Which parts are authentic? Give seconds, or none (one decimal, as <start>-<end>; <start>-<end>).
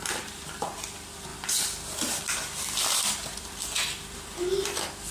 0.0-1.3; 3.0-5.1